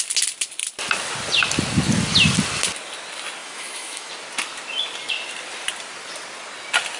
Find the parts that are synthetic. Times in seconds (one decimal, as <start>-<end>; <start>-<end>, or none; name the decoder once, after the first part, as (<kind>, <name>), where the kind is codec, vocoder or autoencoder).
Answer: 3.4-4.1 (autoencoder, DAC-VAE)